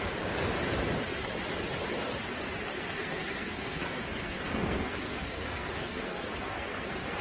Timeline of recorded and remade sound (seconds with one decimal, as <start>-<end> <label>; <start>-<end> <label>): 0.0-2.7 recorded; 2.7-7.2 remade